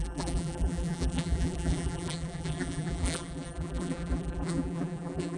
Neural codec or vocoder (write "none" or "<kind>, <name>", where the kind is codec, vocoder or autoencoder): vocoder, BigVGAN v2